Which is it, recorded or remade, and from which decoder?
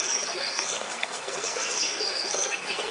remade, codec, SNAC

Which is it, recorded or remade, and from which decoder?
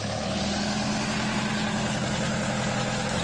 recorded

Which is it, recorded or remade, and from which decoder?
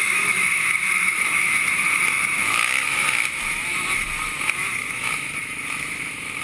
remade, autoencoder, DAC-VAE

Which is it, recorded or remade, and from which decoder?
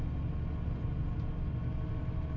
recorded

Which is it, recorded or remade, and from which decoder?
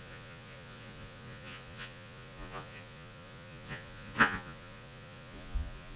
remade, vocoder, Vocos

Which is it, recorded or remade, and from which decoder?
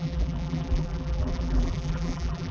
remade, vocoder, BigVGAN v2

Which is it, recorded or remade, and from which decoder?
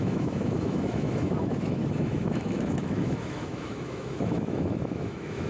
remade, autoencoder, DAC-VAE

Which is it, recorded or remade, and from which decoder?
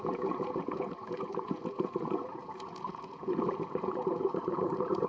remade, vocoder, Vocos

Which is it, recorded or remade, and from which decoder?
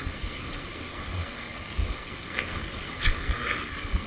remade, codec, SNAC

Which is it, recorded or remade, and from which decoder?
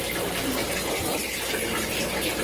recorded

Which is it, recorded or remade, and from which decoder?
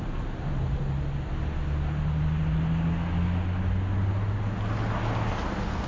recorded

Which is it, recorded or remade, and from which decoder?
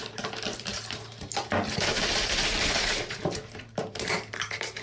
remade, vocoder, BigVGAN v2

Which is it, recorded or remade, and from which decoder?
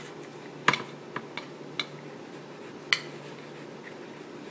recorded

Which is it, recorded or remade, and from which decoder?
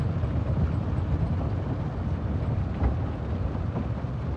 recorded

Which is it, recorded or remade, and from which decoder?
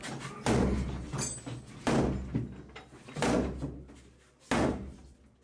recorded